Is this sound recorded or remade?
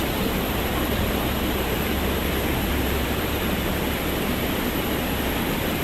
remade